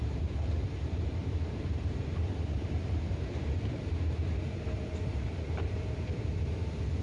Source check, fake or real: fake